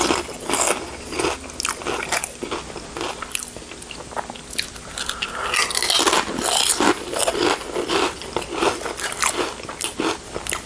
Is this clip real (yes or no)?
yes